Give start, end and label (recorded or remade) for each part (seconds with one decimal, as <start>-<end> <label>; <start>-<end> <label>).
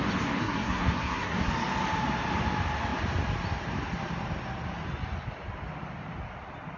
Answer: 0.0-0.4 recorded; 0.4-1.5 remade; 1.5-6.8 recorded